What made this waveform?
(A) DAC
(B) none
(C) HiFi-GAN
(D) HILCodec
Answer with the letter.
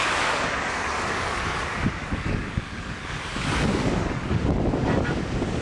A